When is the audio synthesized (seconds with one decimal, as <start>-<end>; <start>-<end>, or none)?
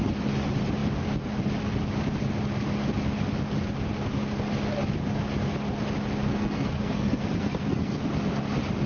6.3-8.0